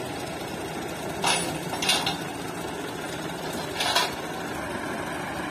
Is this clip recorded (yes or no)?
yes